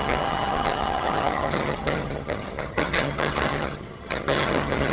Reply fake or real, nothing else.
fake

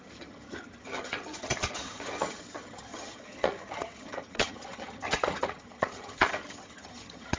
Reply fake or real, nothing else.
fake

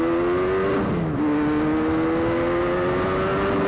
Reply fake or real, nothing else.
real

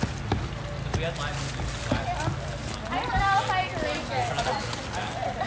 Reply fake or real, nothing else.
real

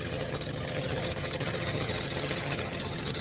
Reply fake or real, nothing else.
fake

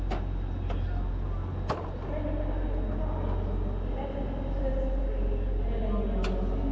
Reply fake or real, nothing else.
real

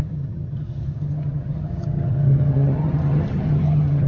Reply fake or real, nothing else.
fake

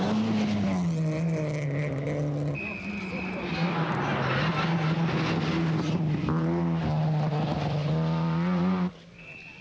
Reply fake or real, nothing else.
real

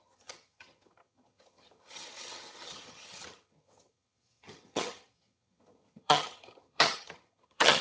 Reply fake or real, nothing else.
fake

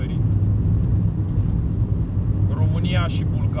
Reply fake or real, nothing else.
real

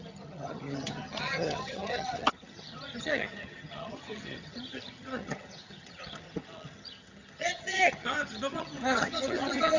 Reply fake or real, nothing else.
fake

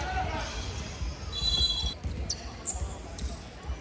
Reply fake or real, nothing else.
real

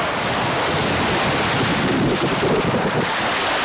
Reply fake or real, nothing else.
real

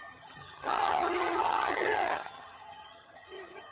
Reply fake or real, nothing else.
fake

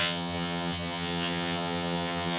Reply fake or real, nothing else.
fake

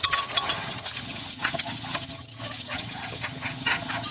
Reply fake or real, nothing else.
fake